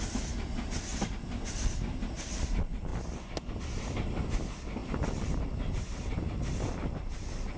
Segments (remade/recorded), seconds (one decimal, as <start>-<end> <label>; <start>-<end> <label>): 0.0-0.9 recorded; 0.9-1.5 remade; 1.5-4.8 recorded; 4.8-6.7 remade; 6.7-7.6 recorded

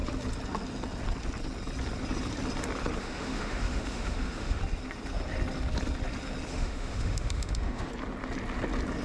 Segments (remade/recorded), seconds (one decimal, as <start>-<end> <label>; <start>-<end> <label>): 0.0-3.0 recorded; 3.0-4.6 remade; 4.6-6.5 recorded; 6.5-7.9 remade; 7.9-9.0 recorded

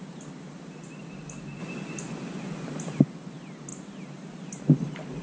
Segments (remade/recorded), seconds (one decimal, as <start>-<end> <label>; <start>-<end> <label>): 0.0-3.7 recorded; 3.7-4.6 remade; 4.6-5.2 recorded